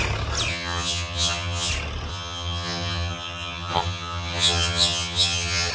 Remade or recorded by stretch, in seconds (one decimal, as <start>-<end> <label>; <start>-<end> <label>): 0.0-0.5 recorded; 0.5-1.7 remade; 1.7-2.1 recorded; 2.1-5.7 remade